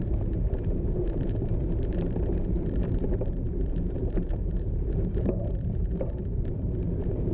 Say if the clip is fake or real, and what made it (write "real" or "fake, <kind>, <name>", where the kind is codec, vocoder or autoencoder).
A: fake, vocoder, BigVGAN v2